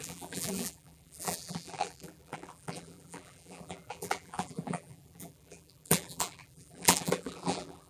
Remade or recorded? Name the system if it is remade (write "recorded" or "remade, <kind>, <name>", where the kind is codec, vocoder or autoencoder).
remade, vocoder, BigVGAN v2